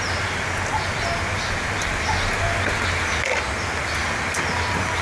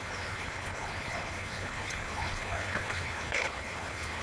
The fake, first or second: second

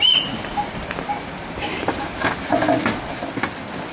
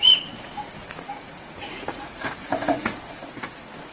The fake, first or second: second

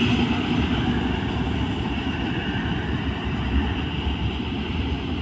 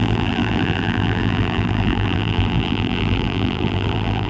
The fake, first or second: second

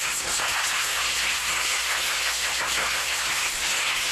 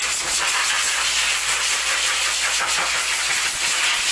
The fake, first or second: first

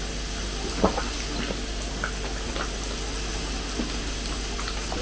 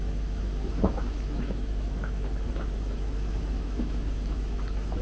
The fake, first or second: second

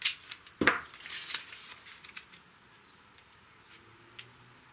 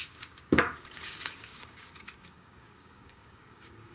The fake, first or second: second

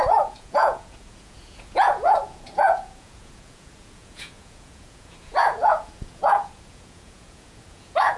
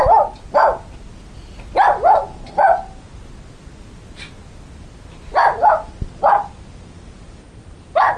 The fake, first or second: first